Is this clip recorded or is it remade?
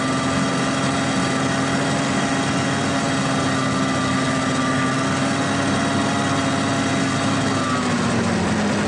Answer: recorded